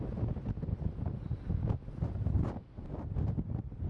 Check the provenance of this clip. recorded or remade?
recorded